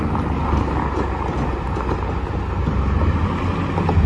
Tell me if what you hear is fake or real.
real